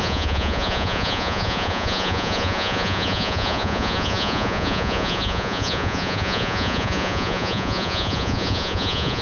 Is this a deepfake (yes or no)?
yes